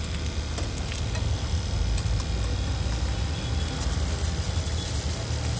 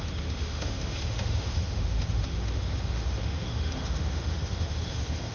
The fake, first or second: second